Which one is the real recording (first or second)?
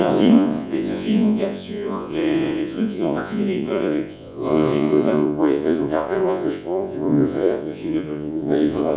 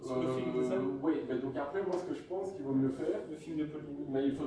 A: second